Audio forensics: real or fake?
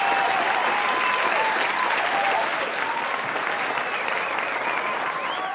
real